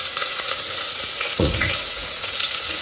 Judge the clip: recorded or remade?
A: remade